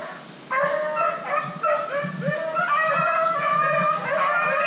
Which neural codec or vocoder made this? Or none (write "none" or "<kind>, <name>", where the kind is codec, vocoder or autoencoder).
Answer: none